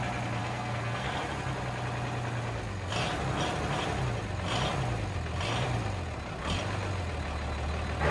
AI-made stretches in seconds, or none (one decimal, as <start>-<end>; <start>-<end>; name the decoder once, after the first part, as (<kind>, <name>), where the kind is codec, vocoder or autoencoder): 0.4-1.1 (codec, SNAC)